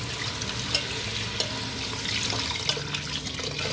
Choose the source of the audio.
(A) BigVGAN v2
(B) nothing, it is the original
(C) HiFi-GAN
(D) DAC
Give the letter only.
B